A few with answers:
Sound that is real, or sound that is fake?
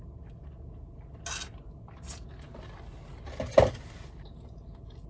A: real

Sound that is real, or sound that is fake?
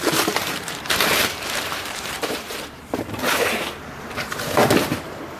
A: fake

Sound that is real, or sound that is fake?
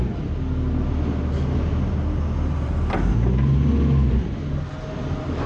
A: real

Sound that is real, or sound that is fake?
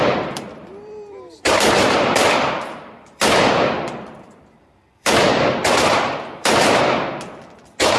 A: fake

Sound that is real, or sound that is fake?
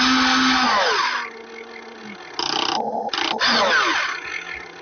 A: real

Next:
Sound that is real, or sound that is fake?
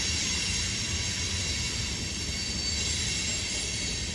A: real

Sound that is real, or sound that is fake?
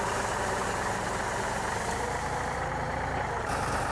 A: fake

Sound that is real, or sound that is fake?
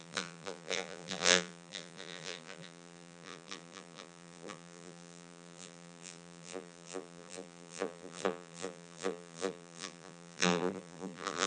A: fake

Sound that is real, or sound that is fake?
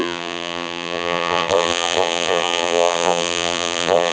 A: fake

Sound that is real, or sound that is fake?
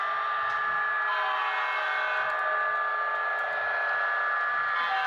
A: real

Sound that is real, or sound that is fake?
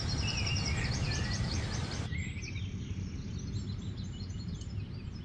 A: fake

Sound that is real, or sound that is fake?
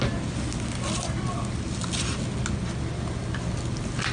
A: real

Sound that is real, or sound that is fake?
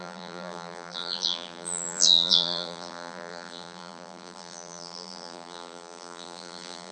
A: fake